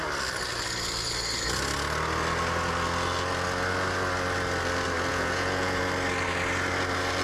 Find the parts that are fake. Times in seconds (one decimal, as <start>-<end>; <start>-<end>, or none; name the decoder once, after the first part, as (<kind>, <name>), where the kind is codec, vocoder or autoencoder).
5.1-5.8 (vocoder, Vocos)

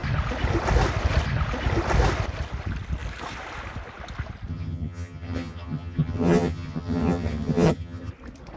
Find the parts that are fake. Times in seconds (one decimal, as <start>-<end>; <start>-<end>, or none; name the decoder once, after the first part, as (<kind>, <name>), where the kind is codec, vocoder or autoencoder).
4.5-8.1 (vocoder, HiFi-GAN)

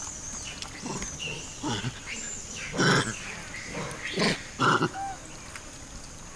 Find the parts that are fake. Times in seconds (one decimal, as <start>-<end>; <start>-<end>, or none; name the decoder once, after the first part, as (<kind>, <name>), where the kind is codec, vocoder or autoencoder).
none

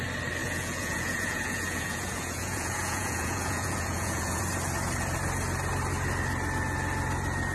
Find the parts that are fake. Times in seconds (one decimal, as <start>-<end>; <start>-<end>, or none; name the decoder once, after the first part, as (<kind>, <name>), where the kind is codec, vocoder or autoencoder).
0.4-4.4 (vocoder, Vocos)

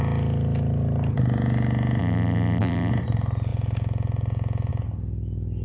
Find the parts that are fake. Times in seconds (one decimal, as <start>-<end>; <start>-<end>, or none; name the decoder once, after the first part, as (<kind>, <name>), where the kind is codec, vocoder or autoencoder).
2.0-2.9 (vocoder, BigVGAN v2)